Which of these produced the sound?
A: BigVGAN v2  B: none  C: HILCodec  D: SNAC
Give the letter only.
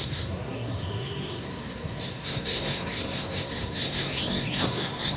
D